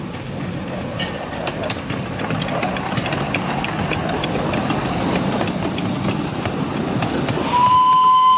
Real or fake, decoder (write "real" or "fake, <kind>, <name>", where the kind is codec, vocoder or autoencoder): real